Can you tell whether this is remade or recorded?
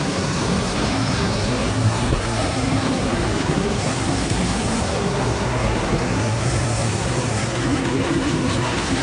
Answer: remade